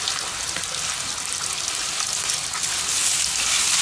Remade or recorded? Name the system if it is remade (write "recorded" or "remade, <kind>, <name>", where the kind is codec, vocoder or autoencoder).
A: recorded